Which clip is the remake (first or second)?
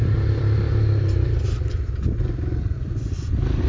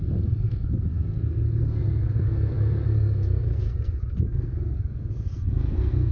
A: second